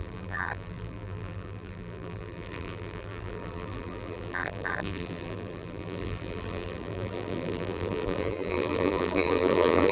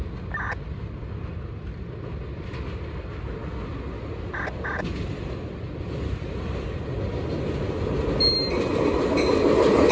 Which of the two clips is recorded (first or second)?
second